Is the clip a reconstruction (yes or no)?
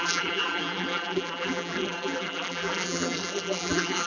yes